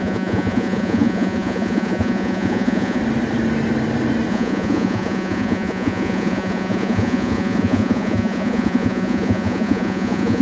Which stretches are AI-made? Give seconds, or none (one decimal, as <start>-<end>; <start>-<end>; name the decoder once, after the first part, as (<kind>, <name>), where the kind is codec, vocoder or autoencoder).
0.0-3.0 (vocoder, Vocos); 4.3-10.4